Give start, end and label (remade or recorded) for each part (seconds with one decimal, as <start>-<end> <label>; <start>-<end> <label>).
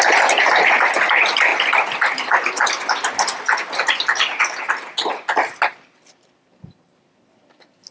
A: 0.0-7.9 recorded